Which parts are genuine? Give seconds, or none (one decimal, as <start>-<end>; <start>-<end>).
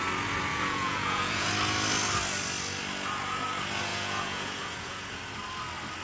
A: 0.0-0.5; 1.5-3.9; 5.2-6.0